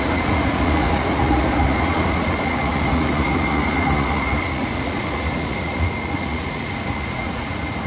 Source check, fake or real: fake